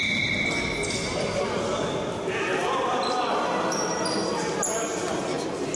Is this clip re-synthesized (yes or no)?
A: no